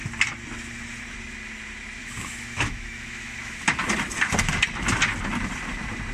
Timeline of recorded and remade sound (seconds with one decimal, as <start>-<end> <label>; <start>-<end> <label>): 0.0-2.0 recorded; 2.0-3.6 remade; 3.6-6.1 recorded